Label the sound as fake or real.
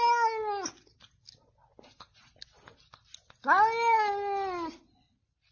real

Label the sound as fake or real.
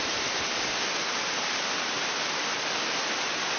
fake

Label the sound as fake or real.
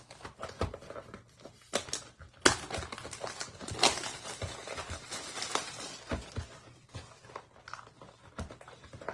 real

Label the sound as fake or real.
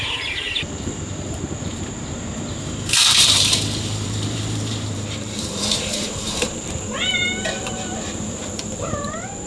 fake